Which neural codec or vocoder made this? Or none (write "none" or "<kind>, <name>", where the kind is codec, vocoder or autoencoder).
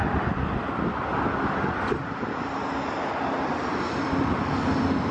none